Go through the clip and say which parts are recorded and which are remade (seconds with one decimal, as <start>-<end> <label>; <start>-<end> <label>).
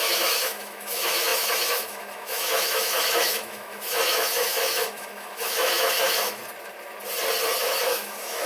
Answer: 0.0-6.4 remade; 6.4-7.6 recorded; 7.6-8.5 remade